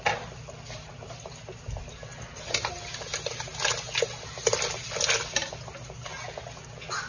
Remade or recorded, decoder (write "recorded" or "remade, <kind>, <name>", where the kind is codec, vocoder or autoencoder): recorded